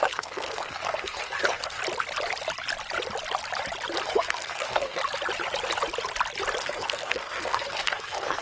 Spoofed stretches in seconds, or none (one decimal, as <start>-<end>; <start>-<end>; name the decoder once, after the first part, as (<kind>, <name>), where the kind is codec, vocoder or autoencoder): 0.0-1.8 (codec, SNAC); 4.0-5.0; 6.6-8.4